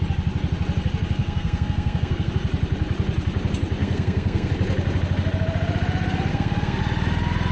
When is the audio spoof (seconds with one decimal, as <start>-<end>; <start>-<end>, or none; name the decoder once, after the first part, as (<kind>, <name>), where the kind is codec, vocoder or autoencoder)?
1.2-2.3 (codec, SNAC); 3.8-4.5; 6.3-6.8